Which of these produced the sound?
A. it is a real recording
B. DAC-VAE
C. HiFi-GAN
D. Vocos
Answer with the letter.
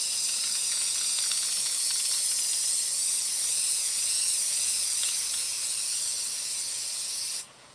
D